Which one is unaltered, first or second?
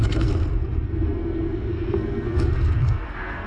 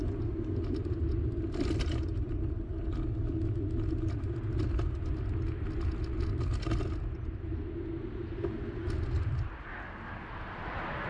second